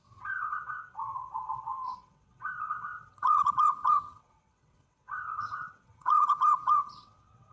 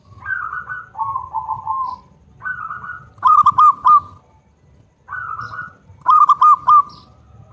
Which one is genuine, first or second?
second